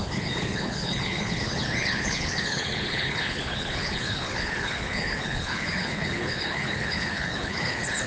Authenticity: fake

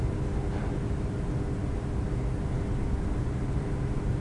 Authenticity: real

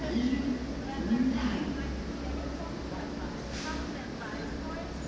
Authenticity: real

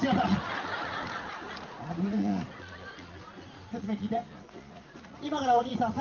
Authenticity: fake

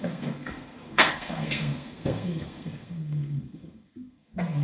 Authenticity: fake